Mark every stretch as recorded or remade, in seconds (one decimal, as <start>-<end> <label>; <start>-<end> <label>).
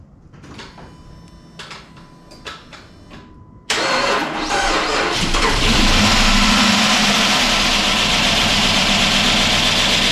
0.0-4.2 recorded; 4.2-9.0 remade; 9.0-10.1 recorded